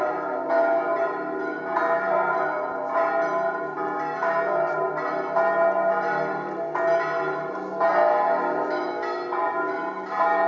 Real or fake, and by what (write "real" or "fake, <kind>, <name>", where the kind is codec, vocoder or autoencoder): real